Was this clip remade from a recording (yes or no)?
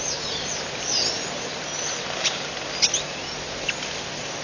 no